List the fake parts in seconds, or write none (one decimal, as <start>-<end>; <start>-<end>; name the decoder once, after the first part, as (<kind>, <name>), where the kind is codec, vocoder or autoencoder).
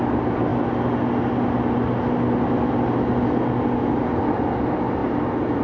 none